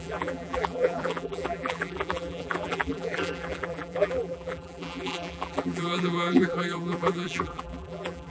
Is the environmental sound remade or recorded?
remade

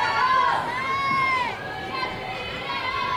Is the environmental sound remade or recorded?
remade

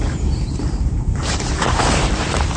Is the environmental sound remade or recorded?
remade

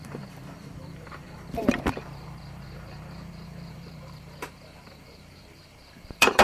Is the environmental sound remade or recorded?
remade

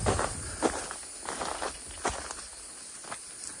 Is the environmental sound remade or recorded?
recorded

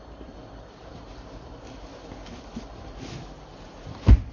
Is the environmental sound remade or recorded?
remade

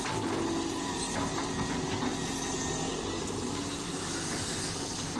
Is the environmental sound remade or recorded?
recorded